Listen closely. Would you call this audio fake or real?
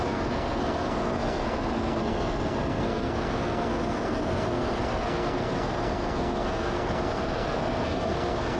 fake